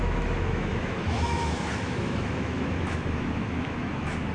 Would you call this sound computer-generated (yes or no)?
yes